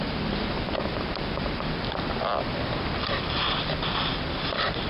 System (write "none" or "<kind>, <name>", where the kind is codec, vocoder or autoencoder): vocoder, BigVGAN v2